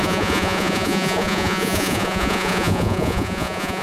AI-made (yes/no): yes